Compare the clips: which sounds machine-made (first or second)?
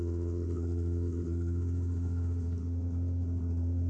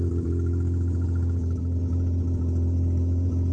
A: first